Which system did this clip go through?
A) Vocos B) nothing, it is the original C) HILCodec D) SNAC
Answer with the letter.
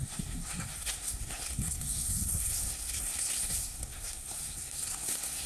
D